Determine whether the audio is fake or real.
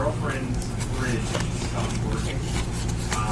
real